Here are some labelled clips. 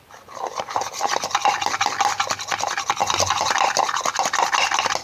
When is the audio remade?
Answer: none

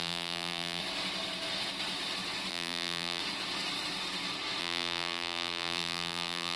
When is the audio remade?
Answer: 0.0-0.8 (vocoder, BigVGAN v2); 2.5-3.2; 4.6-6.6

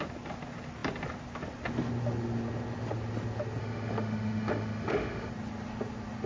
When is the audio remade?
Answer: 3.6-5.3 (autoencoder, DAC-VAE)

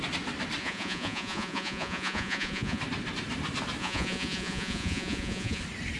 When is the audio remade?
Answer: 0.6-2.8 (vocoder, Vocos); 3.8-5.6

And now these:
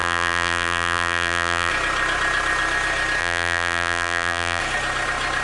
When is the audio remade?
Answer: 0.0-1.7 (vocoder, BigVGAN v2); 3.2-4.6

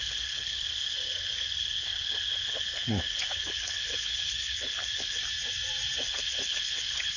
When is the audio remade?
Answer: 0.0-5.2 (codec, HILCodec); 6.0-7.2